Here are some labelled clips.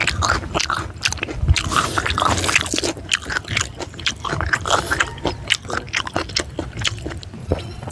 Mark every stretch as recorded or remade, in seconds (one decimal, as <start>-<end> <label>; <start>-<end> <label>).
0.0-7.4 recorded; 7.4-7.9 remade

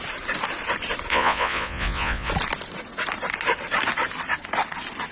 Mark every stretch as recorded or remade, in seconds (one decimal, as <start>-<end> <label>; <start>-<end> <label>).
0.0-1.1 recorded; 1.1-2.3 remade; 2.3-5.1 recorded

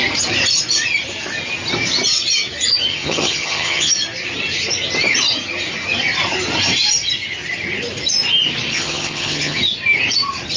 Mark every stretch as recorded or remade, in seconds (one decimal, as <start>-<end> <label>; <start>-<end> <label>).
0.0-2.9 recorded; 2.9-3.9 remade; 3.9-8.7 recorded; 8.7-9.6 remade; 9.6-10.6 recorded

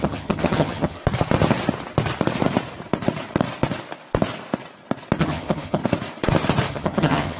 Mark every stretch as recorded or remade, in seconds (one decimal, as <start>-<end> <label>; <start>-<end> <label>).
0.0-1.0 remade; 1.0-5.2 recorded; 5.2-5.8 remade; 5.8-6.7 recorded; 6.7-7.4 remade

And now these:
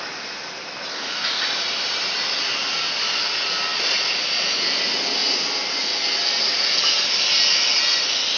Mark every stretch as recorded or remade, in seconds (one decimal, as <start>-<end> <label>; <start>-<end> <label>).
0.0-0.9 recorded; 0.9-1.4 remade; 1.4-8.4 recorded